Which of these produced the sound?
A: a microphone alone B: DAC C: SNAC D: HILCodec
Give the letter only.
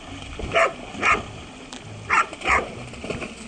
A